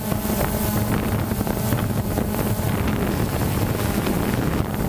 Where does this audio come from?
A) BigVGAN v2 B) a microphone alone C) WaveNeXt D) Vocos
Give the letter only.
B